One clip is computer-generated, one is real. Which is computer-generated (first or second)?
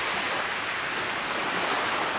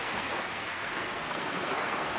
second